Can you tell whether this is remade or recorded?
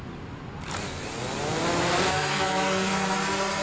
recorded